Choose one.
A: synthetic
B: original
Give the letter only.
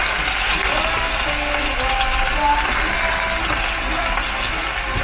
B